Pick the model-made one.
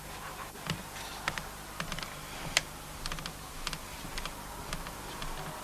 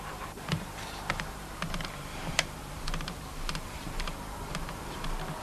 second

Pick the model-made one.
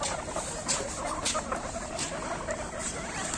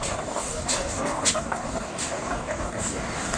second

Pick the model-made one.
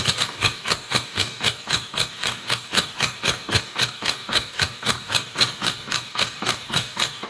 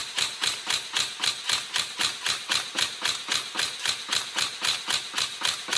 first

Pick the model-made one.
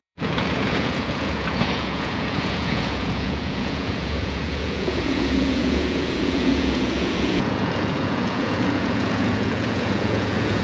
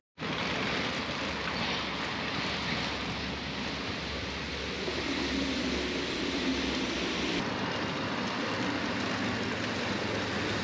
first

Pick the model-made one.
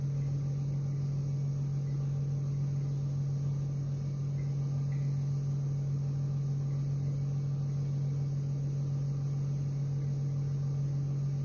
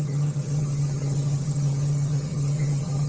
second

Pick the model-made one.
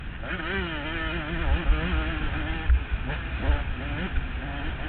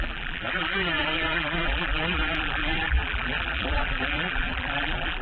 second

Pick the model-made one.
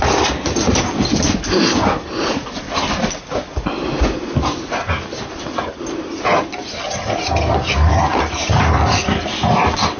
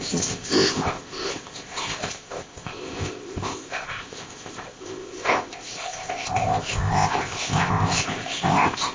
second